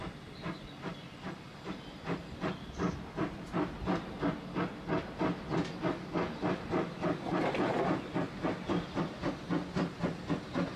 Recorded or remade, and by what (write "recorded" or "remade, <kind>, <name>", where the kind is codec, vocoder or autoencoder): recorded